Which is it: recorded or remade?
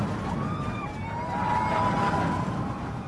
recorded